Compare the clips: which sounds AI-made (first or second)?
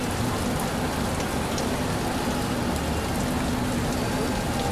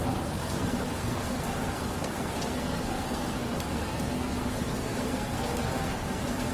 second